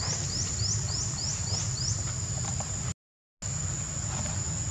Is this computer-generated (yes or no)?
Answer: no